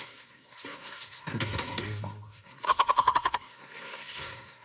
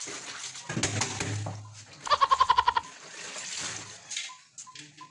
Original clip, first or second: second